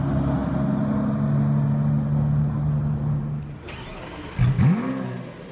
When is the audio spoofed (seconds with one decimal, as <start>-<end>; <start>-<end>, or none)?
none